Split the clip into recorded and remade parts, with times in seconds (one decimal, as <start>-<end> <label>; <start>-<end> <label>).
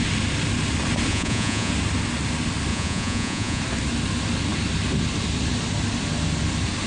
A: 0.0-1.1 recorded; 1.1-1.7 remade; 1.7-2.7 recorded; 2.7-3.6 remade; 3.6-6.9 recorded